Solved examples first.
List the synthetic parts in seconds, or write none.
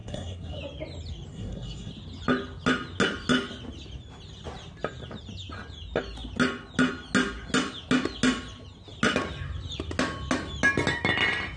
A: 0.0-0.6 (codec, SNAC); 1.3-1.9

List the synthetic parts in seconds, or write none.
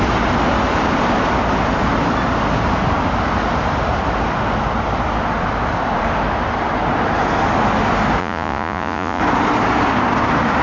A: 8.2-9.2 (vocoder, Vocos)